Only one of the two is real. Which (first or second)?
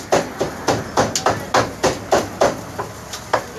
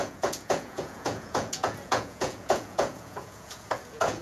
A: first